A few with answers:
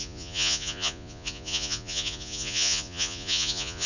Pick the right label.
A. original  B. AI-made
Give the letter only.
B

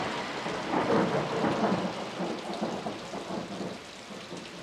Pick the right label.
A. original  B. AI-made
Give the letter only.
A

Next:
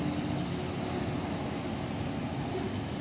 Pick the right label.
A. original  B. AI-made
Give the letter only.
A